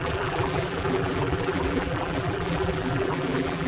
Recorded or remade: remade